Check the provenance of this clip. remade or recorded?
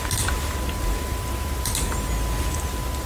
recorded